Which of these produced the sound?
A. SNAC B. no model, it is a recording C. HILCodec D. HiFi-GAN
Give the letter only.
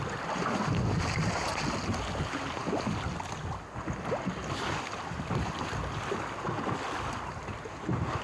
B